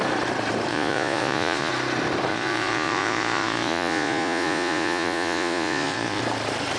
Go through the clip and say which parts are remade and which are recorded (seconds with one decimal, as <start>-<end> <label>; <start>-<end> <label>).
0.0-0.7 recorded; 0.7-1.7 remade; 1.7-2.3 recorded; 2.3-6.2 remade; 6.2-6.8 recorded